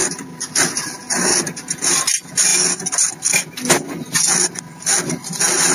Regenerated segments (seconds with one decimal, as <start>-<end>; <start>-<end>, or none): none